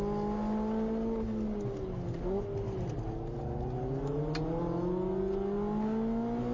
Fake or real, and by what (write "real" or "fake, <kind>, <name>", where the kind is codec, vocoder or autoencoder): real